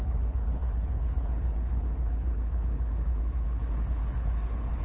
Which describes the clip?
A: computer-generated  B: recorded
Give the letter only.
A